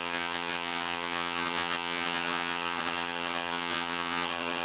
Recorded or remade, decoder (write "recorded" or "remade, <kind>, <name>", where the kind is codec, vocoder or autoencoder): remade, vocoder, HiFi-GAN